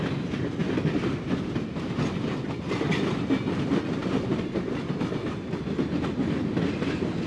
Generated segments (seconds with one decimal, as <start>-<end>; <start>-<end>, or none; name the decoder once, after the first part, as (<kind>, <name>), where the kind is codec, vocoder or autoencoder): 4.0-5.3 (vocoder, BigVGAN v2)